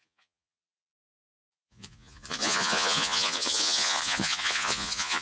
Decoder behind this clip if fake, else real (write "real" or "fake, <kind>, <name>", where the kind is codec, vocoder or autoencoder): fake, vocoder, Vocos